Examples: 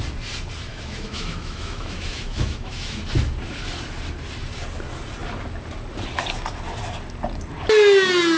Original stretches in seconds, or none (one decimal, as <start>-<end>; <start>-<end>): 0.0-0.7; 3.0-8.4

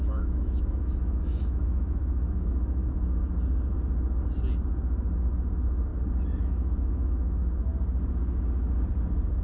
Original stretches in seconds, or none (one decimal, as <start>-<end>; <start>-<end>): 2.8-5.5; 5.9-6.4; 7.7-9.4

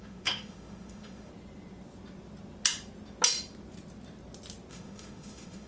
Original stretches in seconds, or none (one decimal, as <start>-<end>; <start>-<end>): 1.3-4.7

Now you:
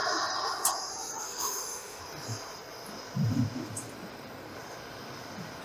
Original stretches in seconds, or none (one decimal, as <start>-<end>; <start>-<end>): 0.0-1.2; 2.0-5.6

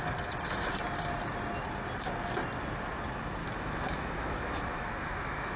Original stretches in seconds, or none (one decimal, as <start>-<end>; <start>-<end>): 0.0-3.4